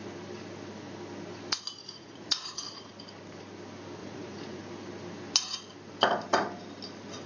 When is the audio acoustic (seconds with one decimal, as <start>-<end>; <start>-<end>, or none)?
0.0-1.8; 2.9-4.0; 4.6-7.3